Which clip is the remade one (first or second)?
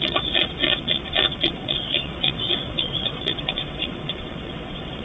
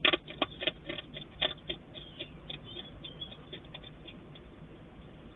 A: first